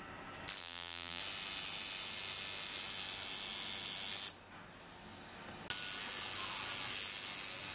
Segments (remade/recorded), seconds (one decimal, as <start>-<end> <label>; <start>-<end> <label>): 0.0-0.6 recorded; 0.6-1.2 remade; 1.2-7.7 recorded